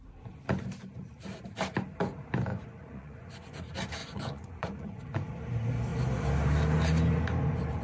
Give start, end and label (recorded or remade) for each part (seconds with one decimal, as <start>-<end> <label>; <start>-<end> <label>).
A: 0.0-2.5 recorded; 2.5-3.6 remade; 3.6-4.0 recorded; 4.0-5.0 remade; 5.0-7.8 recorded